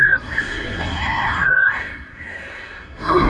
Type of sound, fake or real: fake